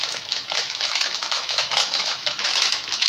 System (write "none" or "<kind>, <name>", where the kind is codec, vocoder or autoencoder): autoencoder, DAC-VAE